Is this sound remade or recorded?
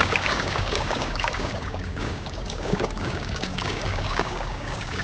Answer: remade